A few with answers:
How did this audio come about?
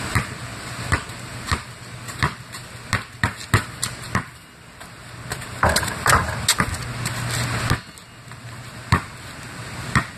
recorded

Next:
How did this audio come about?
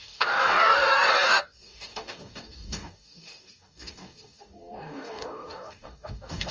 remade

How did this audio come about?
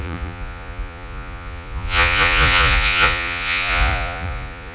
remade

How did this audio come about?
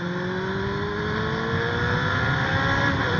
recorded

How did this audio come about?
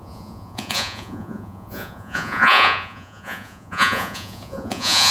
remade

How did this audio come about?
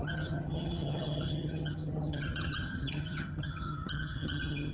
remade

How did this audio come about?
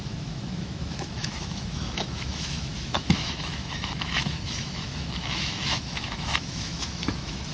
remade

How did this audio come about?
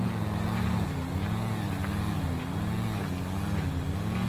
recorded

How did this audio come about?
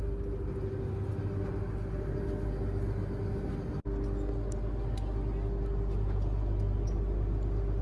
recorded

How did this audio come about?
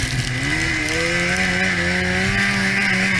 recorded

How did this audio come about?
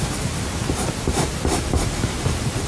remade